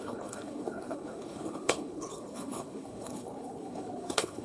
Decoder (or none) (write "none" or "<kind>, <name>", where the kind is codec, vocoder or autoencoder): codec, HILCodec